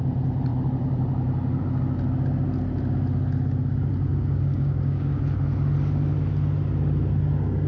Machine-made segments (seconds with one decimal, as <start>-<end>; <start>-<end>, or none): 4.1-5.2

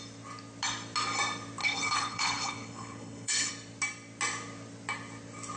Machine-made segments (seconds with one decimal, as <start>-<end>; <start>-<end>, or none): 1.6-3.5

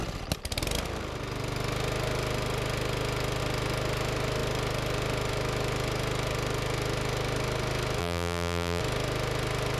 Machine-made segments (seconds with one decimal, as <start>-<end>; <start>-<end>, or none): 8.0-8.8